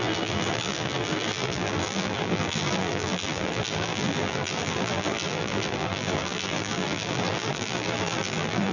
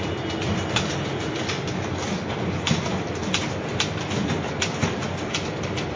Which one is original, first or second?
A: second